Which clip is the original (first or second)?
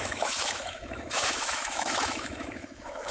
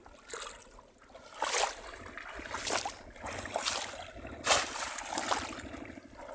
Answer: second